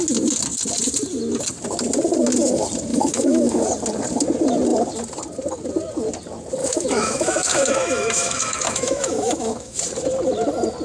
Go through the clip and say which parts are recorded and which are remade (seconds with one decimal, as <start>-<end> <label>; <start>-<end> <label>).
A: 0.0-2.9 recorded; 2.9-3.6 remade; 3.6-6.6 recorded; 6.6-9.8 remade; 9.8-10.8 recorded